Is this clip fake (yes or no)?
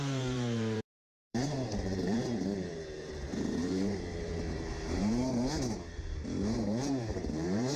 yes